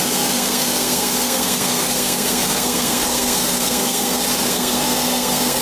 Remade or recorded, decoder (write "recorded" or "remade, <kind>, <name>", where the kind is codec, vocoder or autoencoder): remade, codec, SNAC